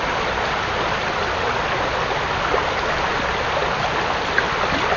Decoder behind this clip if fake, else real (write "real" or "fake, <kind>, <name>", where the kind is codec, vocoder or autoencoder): real